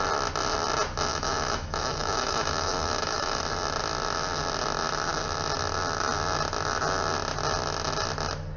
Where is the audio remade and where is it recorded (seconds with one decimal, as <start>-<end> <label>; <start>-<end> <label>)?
0.0-1.1 recorded; 1.1-3.4 remade; 3.4-8.6 recorded